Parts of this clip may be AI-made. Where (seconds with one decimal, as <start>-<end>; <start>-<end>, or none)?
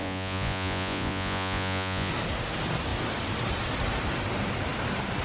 0.0-2.1